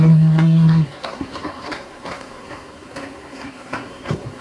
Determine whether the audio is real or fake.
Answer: fake